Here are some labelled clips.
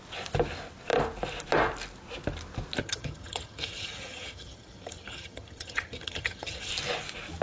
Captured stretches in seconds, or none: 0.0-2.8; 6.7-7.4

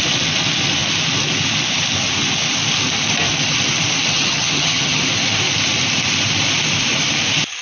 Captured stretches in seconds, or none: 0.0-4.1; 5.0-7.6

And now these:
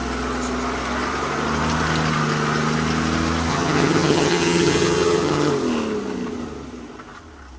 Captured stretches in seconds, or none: 0.0-3.5; 5.5-7.6

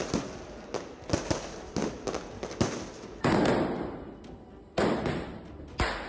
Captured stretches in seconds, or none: 0.0-6.1

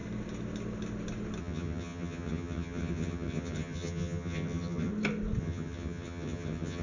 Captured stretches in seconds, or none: 0.0-1.4; 4.9-5.4

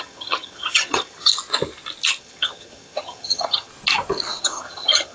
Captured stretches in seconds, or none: 1.3-2.2; 3.7-4.4